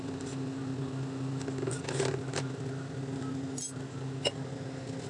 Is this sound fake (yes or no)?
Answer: no